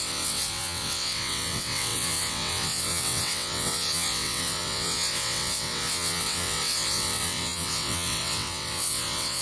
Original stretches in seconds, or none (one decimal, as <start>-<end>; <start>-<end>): none